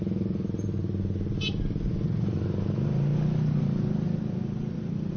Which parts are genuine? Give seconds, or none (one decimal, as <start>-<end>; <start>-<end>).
0.0-5.2